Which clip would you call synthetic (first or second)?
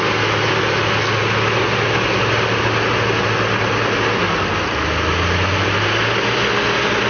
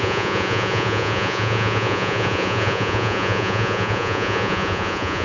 second